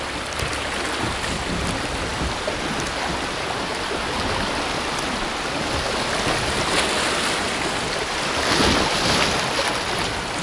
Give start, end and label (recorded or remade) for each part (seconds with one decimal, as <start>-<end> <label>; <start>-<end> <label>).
0.0-10.4 recorded